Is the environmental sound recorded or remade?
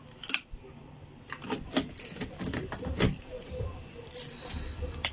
remade